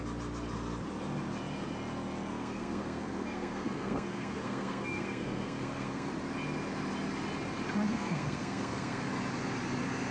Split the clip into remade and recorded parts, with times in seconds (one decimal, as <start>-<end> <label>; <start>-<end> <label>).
0.0-2.3 recorded; 2.3-6.1 remade; 6.1-7.9 recorded; 7.9-9.1 remade; 9.1-10.1 recorded